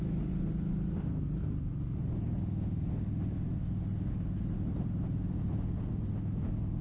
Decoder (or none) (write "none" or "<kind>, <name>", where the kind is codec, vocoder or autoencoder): none